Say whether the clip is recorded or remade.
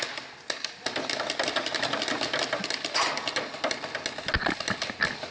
recorded